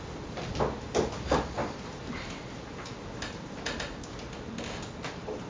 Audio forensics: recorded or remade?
recorded